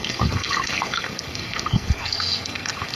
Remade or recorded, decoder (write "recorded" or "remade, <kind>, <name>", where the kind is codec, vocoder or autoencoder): remade, codec, SNAC